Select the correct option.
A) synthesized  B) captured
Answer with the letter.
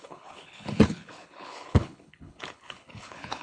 A